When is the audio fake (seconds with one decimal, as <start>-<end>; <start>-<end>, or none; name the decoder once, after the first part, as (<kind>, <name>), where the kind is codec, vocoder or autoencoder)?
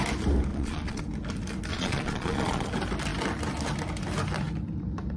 0.5-1.0 (vocoder, Vocos); 1.7-2.7